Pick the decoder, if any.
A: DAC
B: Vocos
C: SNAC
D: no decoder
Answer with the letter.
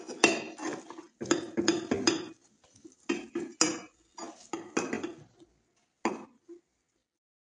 D